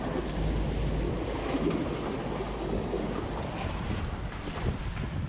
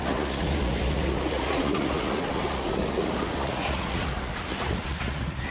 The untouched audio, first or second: first